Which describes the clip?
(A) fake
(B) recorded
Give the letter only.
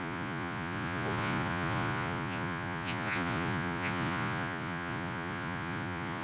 A